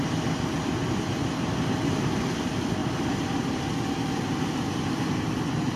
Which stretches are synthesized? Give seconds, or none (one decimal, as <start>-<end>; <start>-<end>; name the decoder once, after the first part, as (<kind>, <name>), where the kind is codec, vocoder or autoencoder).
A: none